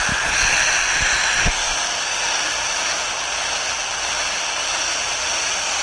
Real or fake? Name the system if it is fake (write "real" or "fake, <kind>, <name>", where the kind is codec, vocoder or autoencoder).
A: real